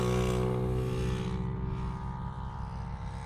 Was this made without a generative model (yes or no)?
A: yes